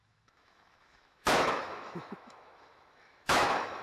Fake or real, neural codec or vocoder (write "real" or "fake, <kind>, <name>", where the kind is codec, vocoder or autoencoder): fake, autoencoder, DAC-VAE